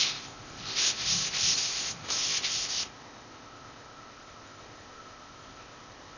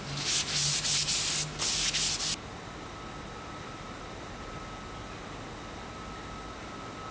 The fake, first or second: first